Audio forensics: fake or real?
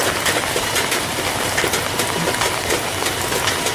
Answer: real